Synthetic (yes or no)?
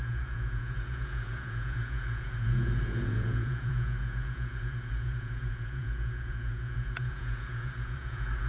yes